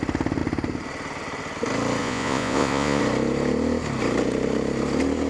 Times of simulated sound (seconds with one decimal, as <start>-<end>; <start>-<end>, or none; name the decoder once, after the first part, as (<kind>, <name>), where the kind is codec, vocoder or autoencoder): 2.0-3.0 (vocoder, Vocos)